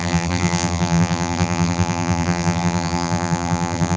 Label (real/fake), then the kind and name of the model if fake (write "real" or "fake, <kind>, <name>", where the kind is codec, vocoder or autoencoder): fake, vocoder, BigVGAN v2